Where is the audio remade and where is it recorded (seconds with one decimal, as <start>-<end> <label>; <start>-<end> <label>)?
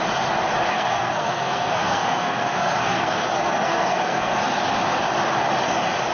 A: 0.0-0.7 recorded; 0.7-4.4 remade; 4.4-6.1 recorded